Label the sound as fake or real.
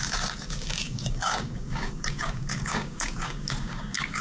fake